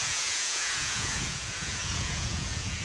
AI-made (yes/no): yes